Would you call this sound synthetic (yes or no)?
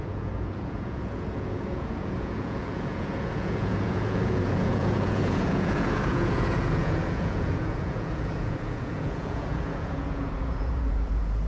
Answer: yes